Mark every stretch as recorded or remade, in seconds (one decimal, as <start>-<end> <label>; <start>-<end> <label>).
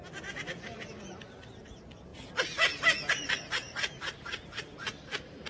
0.0-5.5 recorded